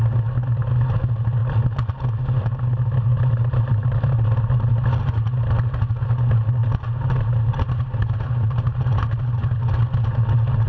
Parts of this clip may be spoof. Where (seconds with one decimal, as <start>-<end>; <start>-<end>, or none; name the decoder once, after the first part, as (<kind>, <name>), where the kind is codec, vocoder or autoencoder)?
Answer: 3.1-4.5 (vocoder, BigVGAN v2); 6.6-9.6